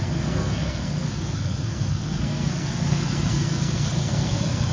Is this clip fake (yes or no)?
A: yes